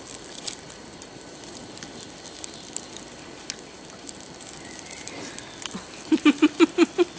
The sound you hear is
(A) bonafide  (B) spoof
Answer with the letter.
B